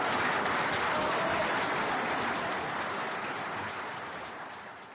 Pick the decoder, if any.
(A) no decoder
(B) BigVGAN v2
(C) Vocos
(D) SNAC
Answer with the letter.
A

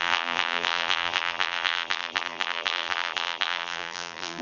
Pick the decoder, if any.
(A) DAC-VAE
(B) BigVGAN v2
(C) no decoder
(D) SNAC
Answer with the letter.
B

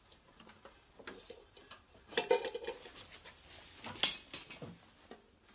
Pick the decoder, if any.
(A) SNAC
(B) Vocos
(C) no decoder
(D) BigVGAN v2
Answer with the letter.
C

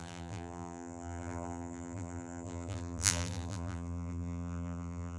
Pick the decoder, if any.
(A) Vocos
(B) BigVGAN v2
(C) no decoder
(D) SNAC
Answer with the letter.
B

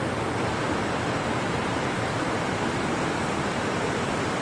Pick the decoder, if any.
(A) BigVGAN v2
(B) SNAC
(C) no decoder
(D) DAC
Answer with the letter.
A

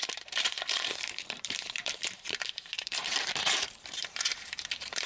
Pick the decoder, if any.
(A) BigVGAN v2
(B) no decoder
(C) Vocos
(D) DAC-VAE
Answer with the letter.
A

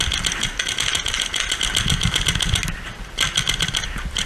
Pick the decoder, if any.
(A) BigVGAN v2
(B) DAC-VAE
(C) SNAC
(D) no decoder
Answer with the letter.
D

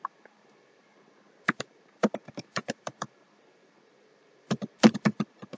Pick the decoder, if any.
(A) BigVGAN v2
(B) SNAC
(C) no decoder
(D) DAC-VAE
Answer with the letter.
A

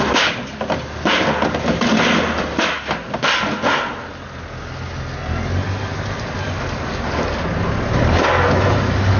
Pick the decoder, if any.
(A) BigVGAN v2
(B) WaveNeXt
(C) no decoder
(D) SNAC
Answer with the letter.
C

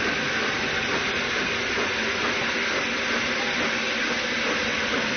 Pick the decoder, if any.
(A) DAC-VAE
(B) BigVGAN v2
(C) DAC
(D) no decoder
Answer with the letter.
D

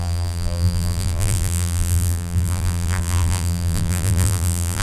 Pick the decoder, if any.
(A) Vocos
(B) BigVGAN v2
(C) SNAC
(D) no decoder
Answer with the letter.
B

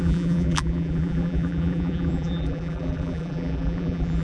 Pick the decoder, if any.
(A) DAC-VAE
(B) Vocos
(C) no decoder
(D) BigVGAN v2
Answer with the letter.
D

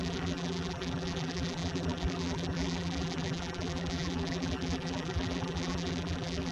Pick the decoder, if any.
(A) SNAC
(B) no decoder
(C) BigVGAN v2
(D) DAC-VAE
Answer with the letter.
C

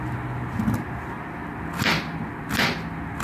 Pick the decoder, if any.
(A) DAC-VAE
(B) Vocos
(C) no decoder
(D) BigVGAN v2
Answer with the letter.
C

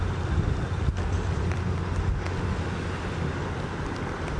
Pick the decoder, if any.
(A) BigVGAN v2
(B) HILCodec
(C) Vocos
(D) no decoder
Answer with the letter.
D